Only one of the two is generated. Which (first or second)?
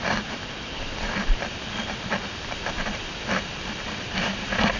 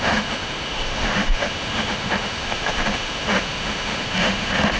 second